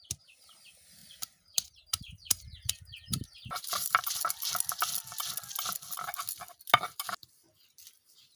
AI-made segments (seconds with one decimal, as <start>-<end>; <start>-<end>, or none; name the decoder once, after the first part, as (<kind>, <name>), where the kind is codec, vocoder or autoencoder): 1.0-4.2 (vocoder, BigVGAN v2)